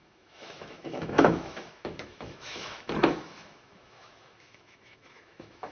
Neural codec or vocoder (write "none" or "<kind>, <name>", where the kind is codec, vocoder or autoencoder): autoencoder, DAC-VAE